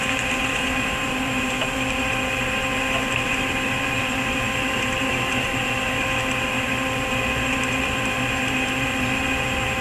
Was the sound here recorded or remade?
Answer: remade